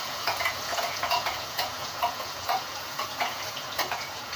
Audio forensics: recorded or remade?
remade